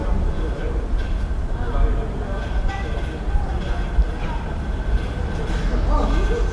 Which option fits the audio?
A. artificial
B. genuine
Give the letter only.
B